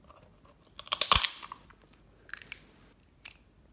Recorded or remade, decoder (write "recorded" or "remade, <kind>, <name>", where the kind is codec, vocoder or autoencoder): recorded